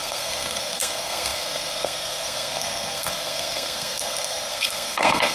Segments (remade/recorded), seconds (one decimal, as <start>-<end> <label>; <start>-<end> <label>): 0.0-5.3 remade